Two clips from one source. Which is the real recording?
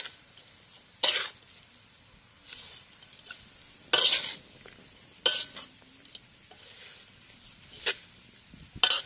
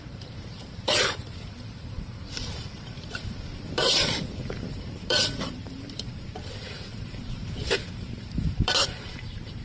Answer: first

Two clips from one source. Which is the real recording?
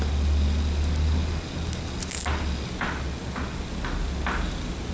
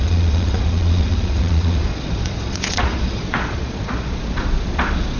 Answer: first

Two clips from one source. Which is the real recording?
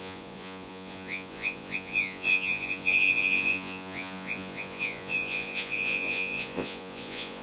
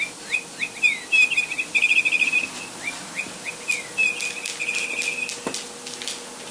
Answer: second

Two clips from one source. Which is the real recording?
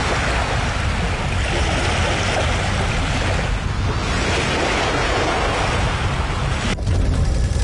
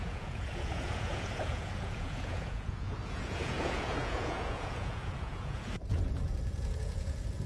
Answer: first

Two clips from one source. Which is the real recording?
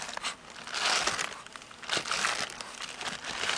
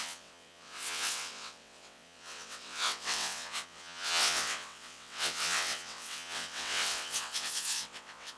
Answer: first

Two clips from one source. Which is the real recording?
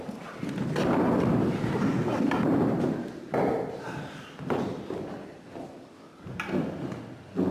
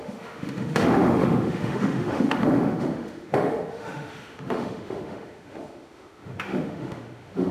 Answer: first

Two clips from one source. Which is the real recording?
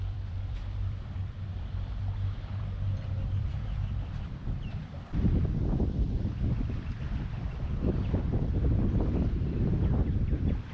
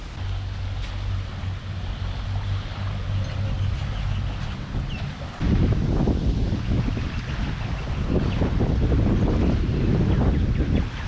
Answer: second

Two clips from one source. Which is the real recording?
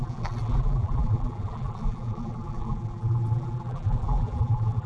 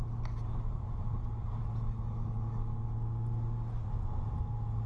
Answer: second